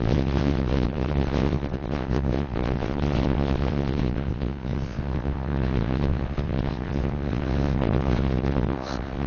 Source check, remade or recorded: remade